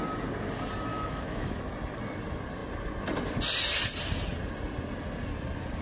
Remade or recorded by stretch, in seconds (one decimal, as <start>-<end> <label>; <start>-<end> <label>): 0.0-0.9 recorded; 0.9-1.6 remade; 1.6-5.8 recorded